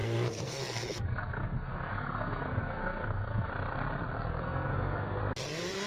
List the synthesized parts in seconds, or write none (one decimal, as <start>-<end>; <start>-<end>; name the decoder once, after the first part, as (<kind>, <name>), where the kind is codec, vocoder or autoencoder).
0.0-3.5 (codec, SNAC); 4.3-5.2